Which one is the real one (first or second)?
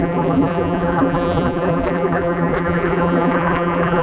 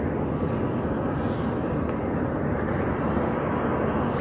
second